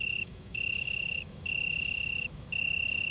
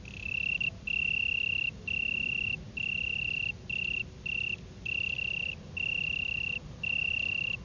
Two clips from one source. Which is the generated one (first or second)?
first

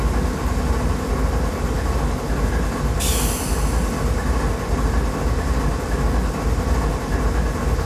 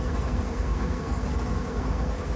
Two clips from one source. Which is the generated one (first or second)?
second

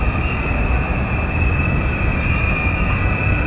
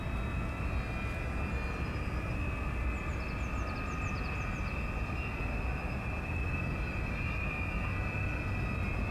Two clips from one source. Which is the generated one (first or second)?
first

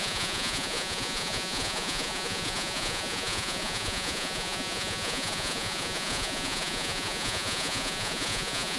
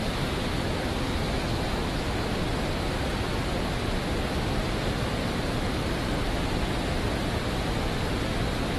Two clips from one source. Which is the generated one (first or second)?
first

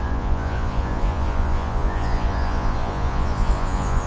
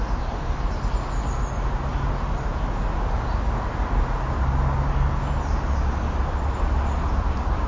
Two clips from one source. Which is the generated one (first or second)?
first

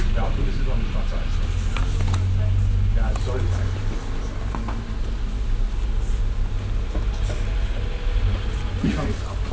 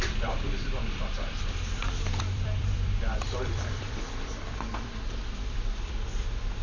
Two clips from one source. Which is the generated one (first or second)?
second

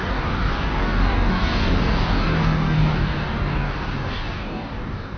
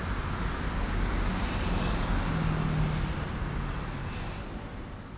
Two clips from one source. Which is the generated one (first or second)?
first